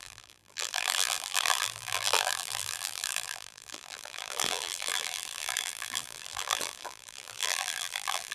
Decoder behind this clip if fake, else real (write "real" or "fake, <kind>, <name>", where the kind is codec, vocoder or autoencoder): fake, vocoder, BigVGAN v2